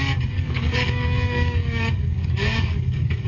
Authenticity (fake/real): fake